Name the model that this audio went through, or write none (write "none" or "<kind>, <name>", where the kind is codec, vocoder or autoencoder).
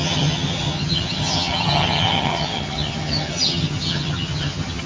vocoder, HiFi-GAN